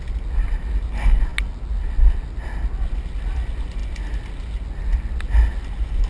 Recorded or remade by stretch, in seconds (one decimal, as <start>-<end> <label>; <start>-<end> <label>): 0.0-6.1 recorded